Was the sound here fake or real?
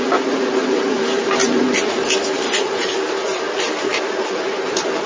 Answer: real